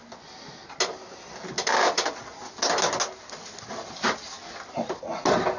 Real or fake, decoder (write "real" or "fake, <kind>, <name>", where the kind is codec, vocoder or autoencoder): real